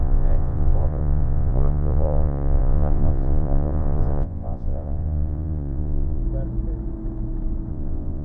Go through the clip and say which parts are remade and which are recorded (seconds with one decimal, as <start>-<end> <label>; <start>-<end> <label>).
0.0-6.2 remade; 6.2-7.7 recorded; 7.7-8.2 remade